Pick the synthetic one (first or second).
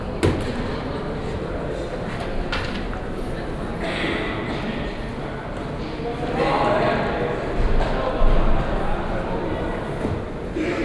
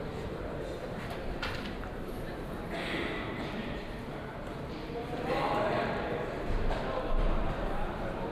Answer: second